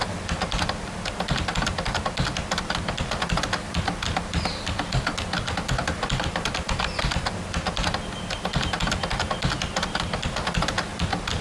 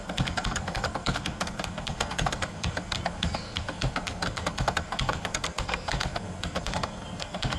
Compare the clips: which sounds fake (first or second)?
second